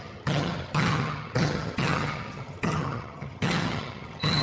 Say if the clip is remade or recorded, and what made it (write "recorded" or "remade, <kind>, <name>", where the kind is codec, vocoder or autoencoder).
remade, vocoder, HiFi-GAN